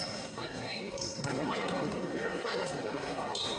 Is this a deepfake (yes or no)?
yes